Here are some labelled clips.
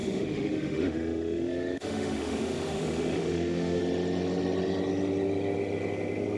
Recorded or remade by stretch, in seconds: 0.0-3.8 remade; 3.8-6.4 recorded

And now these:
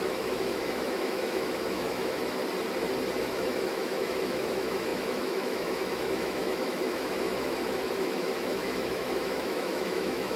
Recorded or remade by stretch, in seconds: 0.0-2.4 remade; 2.4-3.2 recorded; 3.2-10.4 remade

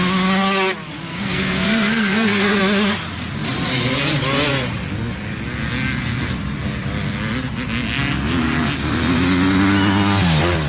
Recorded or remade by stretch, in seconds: 0.0-1.1 recorded; 1.1-2.6 remade; 2.6-10.7 recorded

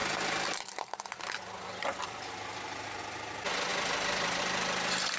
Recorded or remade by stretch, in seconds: 0.0-3.0 remade; 3.0-3.7 recorded; 3.7-4.4 remade; 4.4-5.2 recorded

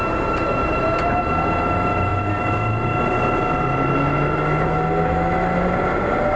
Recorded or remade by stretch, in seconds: 0.0-6.4 recorded

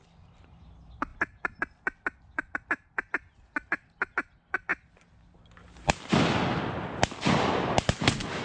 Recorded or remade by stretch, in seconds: 0.0-8.4 recorded

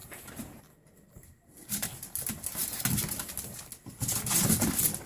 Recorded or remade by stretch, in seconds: 0.0-5.1 recorded